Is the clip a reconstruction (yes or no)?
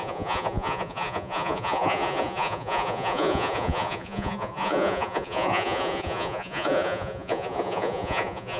yes